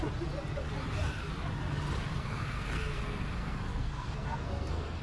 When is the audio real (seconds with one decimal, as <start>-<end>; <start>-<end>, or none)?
0.0-2.1